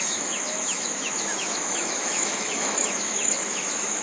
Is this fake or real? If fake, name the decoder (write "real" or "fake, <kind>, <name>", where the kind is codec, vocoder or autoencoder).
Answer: fake, autoencoder, DAC-VAE